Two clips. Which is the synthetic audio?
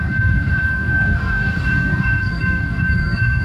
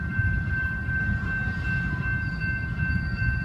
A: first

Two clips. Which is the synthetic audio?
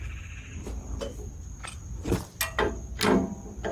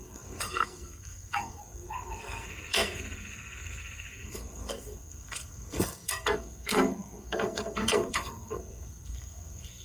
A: second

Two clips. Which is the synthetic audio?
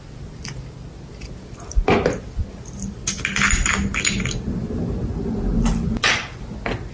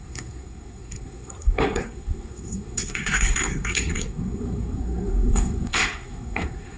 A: second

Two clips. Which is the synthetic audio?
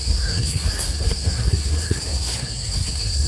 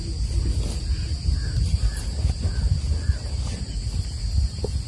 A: first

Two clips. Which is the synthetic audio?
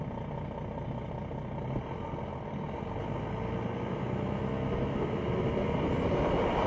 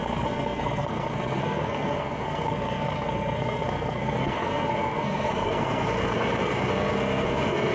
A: second